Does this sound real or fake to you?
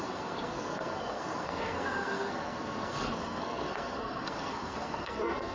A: fake